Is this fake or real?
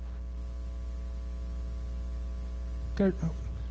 real